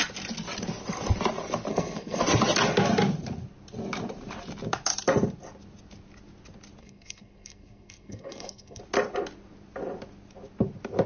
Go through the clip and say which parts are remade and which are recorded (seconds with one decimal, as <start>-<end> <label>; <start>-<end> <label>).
0.0-1.7 recorded; 1.7-2.2 remade; 2.2-6.8 recorded; 6.8-8.8 remade; 8.8-11.1 recorded